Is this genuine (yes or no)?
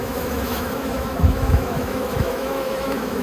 no